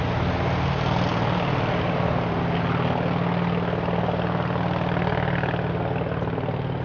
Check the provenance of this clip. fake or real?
real